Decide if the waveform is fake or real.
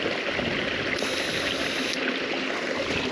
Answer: real